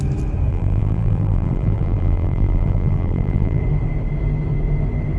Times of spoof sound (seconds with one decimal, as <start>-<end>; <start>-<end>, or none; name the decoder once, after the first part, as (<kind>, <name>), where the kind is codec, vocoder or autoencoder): 0.5-3.6 (vocoder, BigVGAN v2)